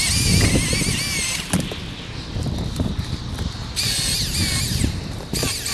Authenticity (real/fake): real